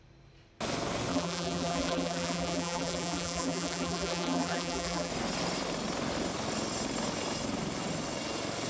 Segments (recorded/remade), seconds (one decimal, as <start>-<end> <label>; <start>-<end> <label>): 0.0-1.1 recorded; 1.1-5.1 remade; 5.1-8.7 recorded